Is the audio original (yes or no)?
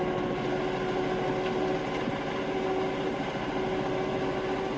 yes